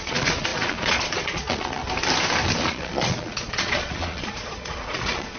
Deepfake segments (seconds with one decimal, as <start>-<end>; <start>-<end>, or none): 0.0-1.8; 2.6-5.4